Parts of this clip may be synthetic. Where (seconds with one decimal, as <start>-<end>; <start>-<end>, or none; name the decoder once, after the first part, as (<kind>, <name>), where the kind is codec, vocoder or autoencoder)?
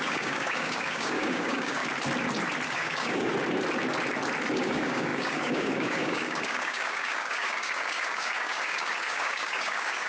0.0-1.8 (codec, DAC); 2.7-3.3; 4.6-10.1